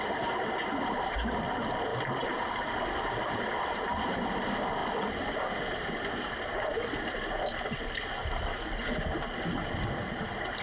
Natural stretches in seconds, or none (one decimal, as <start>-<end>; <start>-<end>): 0.0-10.6